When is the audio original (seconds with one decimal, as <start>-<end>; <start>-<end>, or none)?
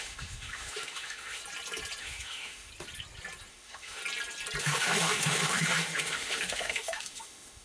1.4-2.0; 2.7-3.5; 4.0-4.6